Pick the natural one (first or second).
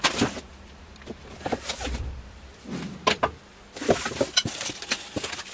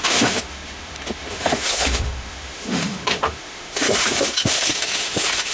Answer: first